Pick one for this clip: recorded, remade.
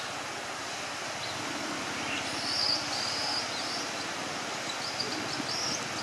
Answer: recorded